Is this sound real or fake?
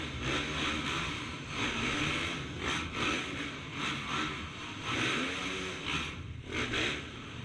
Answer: real